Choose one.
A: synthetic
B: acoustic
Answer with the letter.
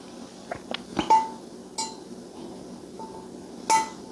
B